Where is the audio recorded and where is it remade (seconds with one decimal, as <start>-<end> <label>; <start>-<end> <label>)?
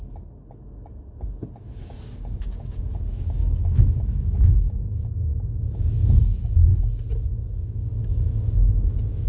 0.0-1.6 recorded; 1.6-6.7 remade; 6.7-7.3 recorded; 7.3-9.3 remade